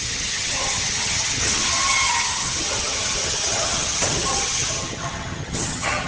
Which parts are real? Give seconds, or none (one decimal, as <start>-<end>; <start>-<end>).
none